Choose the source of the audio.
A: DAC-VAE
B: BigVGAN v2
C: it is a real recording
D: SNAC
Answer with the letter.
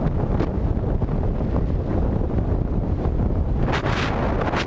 C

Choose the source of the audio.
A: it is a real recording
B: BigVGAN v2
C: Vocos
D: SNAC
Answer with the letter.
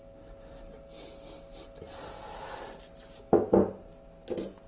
A